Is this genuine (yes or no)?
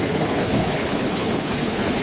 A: no